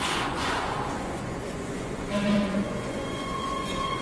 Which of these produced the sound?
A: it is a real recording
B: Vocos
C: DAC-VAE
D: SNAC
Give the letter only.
B